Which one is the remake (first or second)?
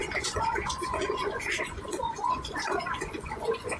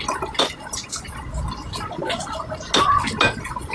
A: first